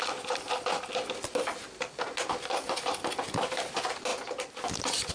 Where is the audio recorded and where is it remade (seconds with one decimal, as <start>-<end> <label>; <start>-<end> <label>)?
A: 0.0-5.1 recorded